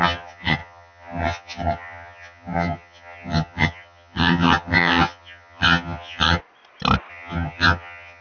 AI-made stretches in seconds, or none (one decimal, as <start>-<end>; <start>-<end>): 0.0-6.4; 7.1-8.2